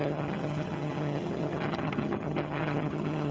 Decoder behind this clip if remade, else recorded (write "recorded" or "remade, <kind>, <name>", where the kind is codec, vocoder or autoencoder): remade, vocoder, HiFi-GAN